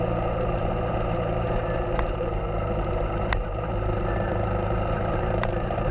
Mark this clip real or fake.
fake